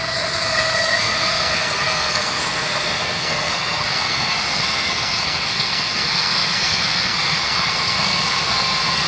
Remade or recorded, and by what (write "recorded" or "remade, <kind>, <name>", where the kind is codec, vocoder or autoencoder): remade, codec, SNAC